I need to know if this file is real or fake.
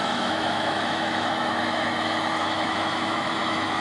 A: fake